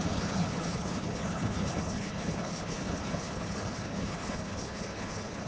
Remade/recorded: remade